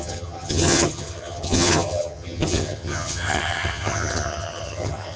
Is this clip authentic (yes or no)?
no